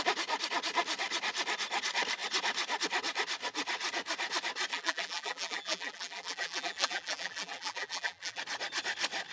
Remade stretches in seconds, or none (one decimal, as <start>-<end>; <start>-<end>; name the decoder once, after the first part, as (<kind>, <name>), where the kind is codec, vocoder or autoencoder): 4.7-8.4 (vocoder, BigVGAN v2)